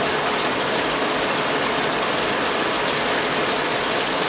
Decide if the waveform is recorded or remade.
recorded